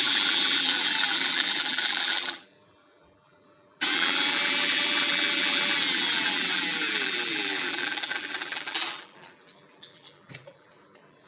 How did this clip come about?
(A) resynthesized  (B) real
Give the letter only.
A